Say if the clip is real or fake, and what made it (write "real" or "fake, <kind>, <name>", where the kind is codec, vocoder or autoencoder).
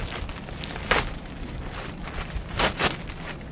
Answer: real